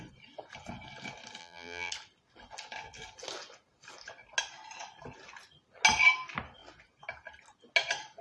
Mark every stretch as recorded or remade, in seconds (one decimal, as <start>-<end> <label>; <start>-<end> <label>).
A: 0.0-1.4 recorded; 1.4-1.9 remade; 1.9-8.2 recorded